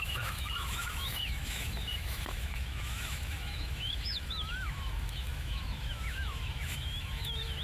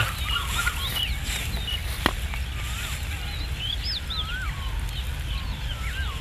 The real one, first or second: second